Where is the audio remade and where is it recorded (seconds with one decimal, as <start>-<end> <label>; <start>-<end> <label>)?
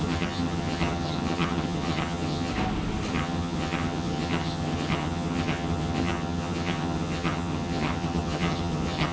0.0-2.5 remade; 2.5-3.1 recorded; 3.1-9.1 remade